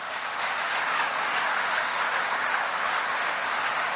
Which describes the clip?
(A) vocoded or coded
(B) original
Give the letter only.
A